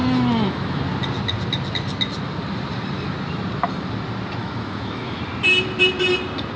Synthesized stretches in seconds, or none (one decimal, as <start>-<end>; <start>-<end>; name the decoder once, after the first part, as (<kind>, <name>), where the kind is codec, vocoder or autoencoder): 0.0-0.8 (autoencoder, DAC-VAE); 4.4-5.2